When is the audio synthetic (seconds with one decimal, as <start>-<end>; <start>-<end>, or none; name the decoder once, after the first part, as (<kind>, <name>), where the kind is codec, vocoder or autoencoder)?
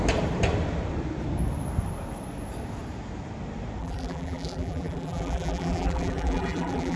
3.8-7.0 (vocoder, BigVGAN v2)